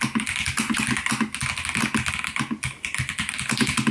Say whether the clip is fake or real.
real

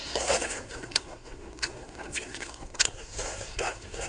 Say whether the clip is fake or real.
fake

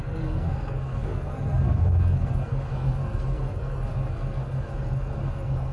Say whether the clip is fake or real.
fake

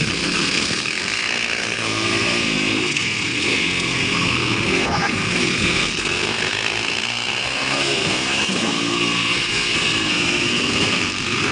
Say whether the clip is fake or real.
fake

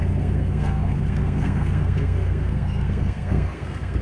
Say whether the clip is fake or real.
fake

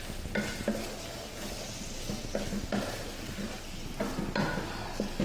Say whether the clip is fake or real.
real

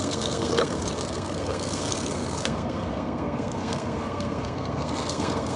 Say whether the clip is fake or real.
fake